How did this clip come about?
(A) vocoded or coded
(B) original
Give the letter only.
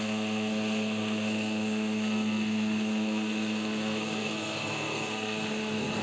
A